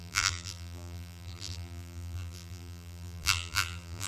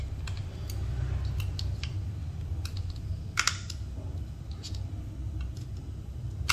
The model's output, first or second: first